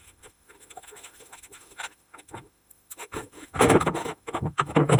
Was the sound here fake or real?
fake